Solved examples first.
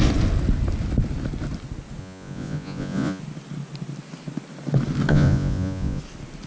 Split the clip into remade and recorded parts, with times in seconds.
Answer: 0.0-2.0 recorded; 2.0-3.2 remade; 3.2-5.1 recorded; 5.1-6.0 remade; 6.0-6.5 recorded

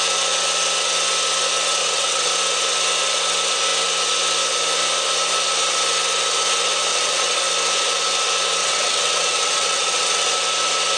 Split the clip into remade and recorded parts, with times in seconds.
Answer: 0.0-1.8 recorded; 1.8-2.3 remade; 2.3-6.9 recorded; 6.9-7.4 remade; 7.4-8.6 recorded; 8.6-10.3 remade; 10.3-11.0 recorded

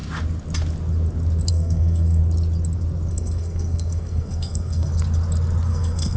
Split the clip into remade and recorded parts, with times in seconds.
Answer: 0.0-1.5 recorded; 1.5-2.2 remade; 2.2-3.1 recorded; 3.1-4.9 remade; 4.9-5.7 recorded; 5.7-6.2 remade

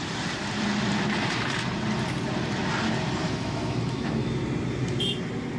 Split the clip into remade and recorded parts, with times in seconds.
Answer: 0.0-3.2 recorded; 3.2-4.3 remade; 4.3-5.6 recorded

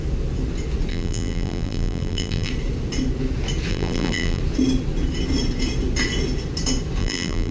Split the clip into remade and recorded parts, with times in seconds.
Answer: 0.0-0.9 recorded; 0.9-2.5 remade; 2.5-3.7 recorded; 3.7-4.4 remade; 4.4-7.0 recorded; 7.0-7.5 remade

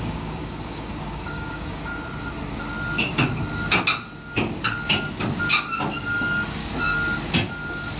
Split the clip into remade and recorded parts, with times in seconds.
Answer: 0.0-1.9 remade; 1.9-5.9 recorded; 5.9-6.6 remade; 6.6-8.0 recorded